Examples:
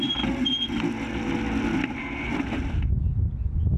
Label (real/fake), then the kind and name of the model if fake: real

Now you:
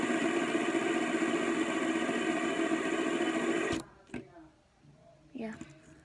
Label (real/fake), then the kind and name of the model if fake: real